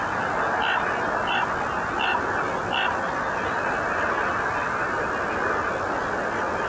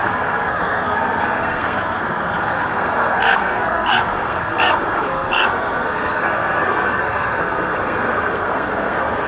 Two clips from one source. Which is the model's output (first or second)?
second